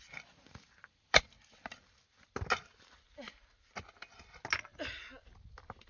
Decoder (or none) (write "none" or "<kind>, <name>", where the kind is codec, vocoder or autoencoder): none